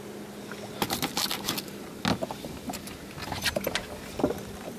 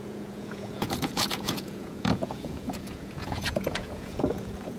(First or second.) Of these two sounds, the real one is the first